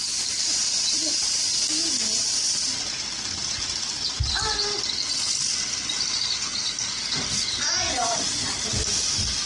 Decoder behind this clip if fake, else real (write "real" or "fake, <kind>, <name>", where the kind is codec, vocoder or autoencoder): real